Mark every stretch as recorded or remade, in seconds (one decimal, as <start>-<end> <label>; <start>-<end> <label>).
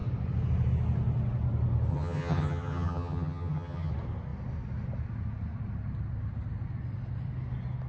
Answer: 0.0-1.9 recorded; 1.9-3.9 remade; 3.9-7.9 recorded